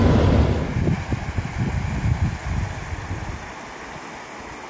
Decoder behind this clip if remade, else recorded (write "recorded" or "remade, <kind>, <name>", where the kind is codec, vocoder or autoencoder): recorded